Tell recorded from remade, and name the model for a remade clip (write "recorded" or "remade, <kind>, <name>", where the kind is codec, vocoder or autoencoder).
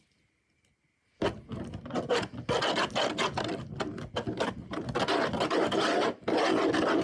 recorded